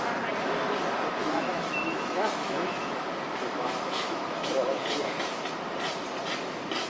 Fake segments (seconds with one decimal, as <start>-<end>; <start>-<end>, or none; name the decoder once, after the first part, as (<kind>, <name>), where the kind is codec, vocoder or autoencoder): 1.2-5.3 (autoencoder, DAC-VAE)